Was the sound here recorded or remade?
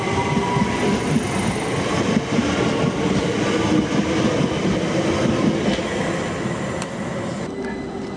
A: recorded